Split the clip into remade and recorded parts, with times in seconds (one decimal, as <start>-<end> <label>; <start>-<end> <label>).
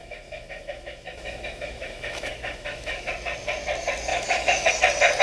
0.0-3.1 remade; 3.1-4.1 recorded; 4.1-4.7 remade; 4.7-5.2 recorded